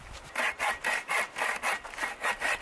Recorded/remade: recorded